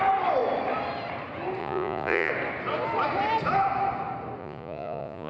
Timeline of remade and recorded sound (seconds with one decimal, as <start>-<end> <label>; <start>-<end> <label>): 0.0-1.6 recorded; 1.6-2.3 remade; 2.3-4.4 recorded; 4.4-5.3 remade